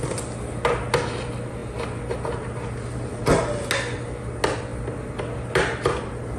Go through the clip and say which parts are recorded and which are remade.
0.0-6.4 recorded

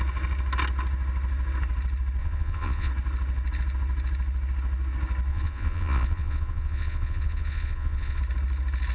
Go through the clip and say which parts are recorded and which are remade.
0.0-2.2 recorded; 2.2-2.9 remade; 2.9-5.3 recorded; 5.3-8.2 remade; 8.2-8.9 recorded